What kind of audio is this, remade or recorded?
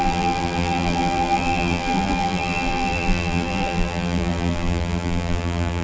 remade